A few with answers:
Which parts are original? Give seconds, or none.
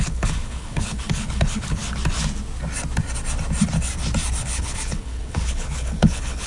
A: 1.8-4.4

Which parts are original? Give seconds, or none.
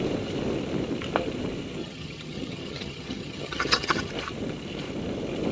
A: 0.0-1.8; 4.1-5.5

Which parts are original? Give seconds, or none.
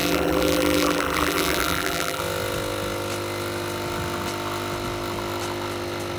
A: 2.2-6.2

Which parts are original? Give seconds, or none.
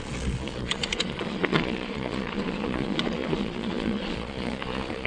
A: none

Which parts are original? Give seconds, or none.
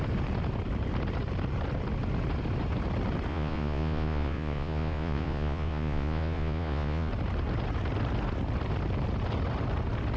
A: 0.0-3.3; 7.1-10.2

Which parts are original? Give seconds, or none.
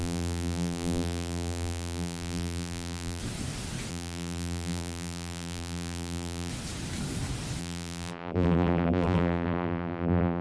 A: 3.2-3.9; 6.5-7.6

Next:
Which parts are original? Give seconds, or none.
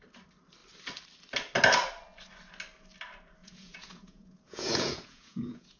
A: 0.0-3.4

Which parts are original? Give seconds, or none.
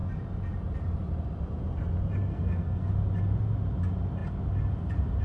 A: 0.0-2.3; 2.9-5.2